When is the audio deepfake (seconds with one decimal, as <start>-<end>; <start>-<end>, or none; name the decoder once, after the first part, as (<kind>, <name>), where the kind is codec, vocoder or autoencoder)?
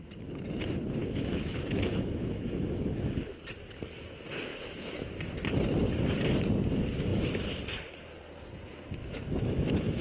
1.0-3.0 (autoencoder, DAC-VAE); 4.5-5.1; 9.0-10.0